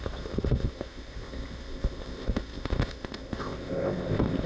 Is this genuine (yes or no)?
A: no